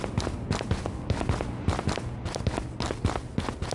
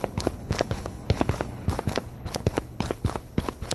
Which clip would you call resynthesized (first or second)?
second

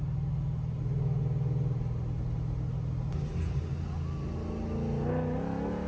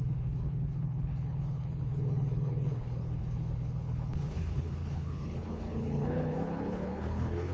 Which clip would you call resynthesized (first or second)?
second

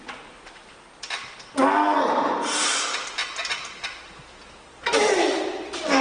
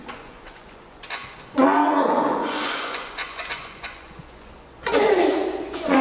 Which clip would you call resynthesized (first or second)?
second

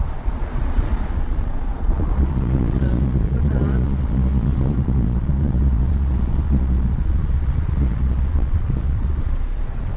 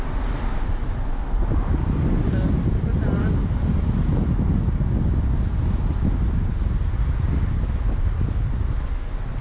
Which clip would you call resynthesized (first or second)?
first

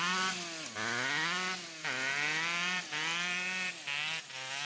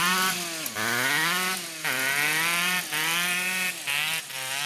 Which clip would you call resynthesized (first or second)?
second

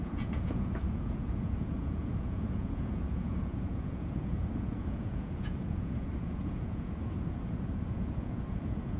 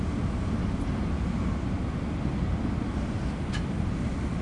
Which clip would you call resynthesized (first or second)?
first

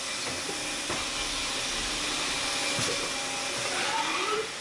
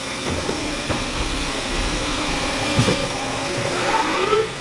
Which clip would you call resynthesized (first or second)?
second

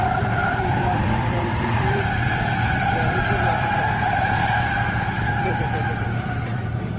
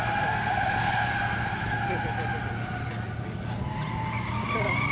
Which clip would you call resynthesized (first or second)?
first